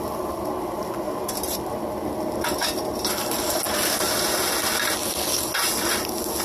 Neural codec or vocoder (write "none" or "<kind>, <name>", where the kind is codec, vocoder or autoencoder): none